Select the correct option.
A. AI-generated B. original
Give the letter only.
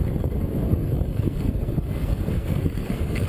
A